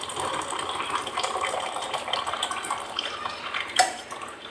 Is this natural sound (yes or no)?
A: no